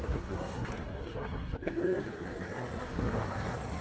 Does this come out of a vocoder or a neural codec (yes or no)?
yes